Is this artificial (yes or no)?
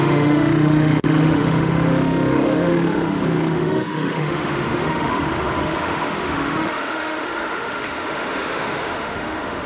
yes